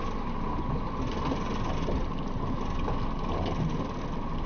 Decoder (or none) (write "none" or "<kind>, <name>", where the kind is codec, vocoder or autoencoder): none